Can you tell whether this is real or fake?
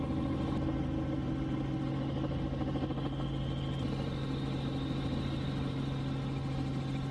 real